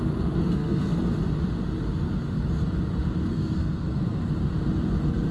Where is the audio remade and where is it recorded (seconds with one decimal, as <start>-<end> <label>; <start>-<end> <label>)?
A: 0.0-0.4 recorded; 0.4-1.0 remade; 1.0-3.3 recorded; 3.3-4.3 remade; 4.3-5.3 recorded